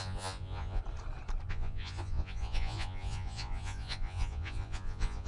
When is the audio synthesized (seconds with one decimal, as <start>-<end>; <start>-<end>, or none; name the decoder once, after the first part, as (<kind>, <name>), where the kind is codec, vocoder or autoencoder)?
0.0-0.8 (vocoder, Vocos); 1.5-5.3